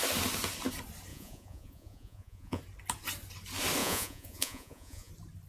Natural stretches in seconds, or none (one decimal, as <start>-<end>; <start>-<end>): 0.0-1.1; 2.6-3.8; 5.1-5.5